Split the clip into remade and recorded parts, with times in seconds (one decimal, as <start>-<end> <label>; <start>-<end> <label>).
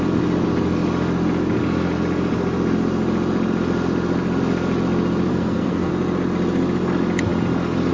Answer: 0.0-5.3 recorded; 5.3-5.9 remade; 5.9-7.9 recorded